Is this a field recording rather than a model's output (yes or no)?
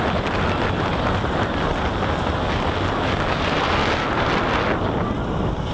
yes